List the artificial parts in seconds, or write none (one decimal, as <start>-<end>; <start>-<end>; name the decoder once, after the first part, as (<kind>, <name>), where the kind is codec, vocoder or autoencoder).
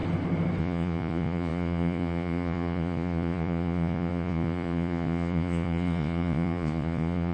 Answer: 0.6-7.3 (vocoder, Vocos)